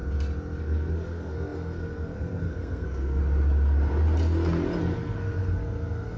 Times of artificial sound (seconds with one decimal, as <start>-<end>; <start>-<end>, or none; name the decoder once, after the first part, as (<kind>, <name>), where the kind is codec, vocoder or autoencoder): 0.6-3.2 (codec, SNAC); 4.8-6.2